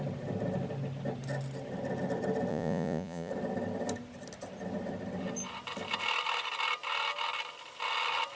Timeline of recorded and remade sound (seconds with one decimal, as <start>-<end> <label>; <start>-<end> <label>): 0.0-2.5 recorded; 2.5-3.3 remade; 3.3-8.4 recorded